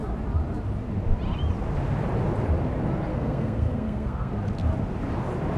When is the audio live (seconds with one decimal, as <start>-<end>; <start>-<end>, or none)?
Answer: 0.0-3.1; 4.3-5.6